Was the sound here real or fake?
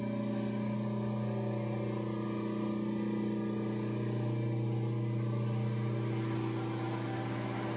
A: real